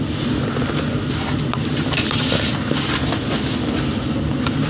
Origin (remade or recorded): recorded